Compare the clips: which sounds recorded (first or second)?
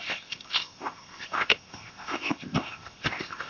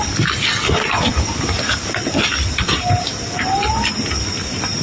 second